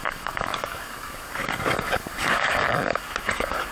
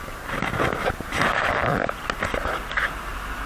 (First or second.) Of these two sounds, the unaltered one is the second